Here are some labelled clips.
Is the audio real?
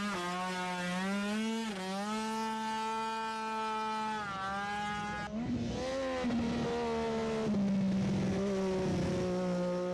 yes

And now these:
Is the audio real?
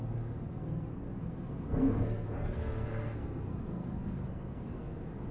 no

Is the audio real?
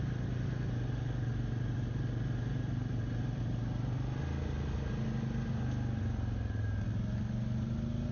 yes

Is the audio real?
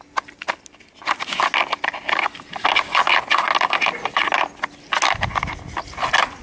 yes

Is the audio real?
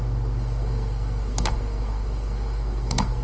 no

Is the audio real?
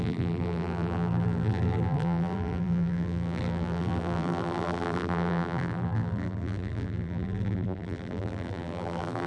no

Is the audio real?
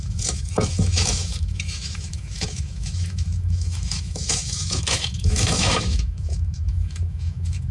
no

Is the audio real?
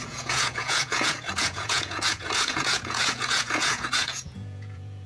no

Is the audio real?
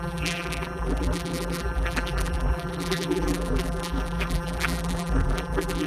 no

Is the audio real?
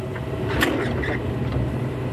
yes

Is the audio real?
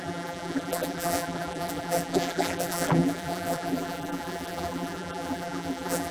no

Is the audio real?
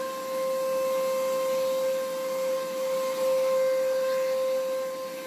yes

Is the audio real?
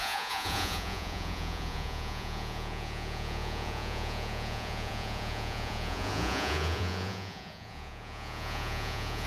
no